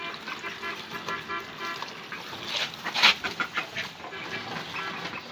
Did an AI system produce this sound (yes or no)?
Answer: no